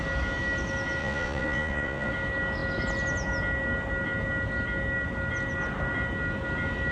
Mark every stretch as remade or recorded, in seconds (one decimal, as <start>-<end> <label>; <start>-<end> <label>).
0.0-1.0 recorded; 1.0-2.1 remade; 2.1-6.9 recorded